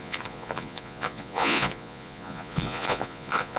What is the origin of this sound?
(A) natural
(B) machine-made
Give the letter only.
B